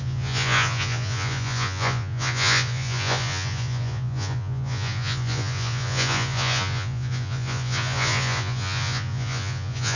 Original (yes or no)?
no